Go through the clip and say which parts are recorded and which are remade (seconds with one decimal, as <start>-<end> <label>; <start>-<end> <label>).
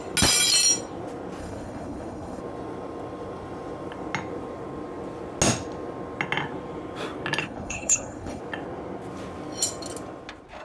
0.0-1.4 recorded; 1.4-2.4 remade; 2.4-7.4 recorded; 7.4-8.4 remade; 8.4-10.6 recorded